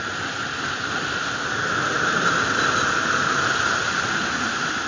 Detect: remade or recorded recorded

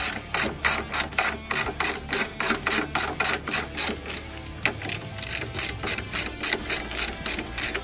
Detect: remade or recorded recorded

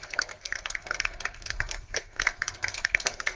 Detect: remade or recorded remade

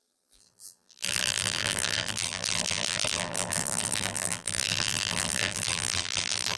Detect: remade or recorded remade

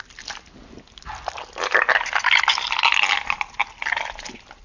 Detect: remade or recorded recorded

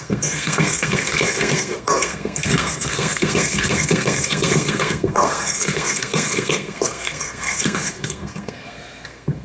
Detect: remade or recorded remade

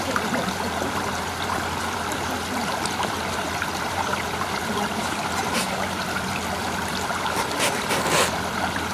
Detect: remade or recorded remade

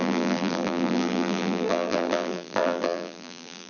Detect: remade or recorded remade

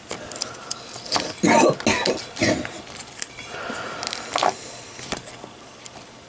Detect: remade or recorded recorded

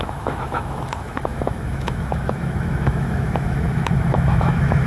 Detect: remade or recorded remade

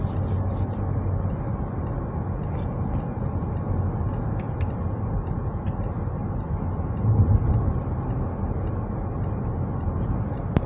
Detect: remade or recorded recorded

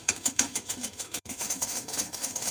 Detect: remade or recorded remade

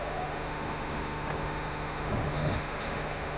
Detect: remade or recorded remade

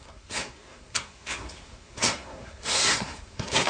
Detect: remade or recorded remade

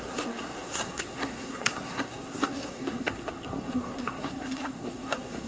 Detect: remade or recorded remade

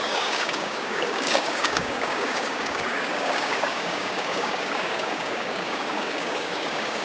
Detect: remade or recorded remade